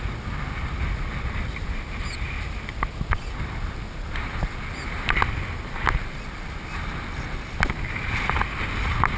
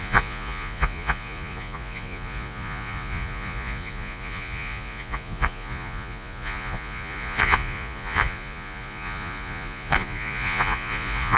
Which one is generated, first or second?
second